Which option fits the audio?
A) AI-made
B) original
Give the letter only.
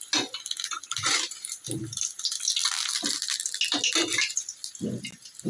B